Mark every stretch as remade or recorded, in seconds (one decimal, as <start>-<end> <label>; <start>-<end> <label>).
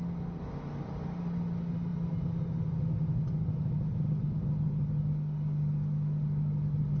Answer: 0.0-7.0 recorded